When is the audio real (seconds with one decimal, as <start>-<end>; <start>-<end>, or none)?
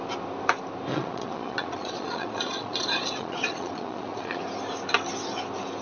0.0-0.9; 4.4-5.8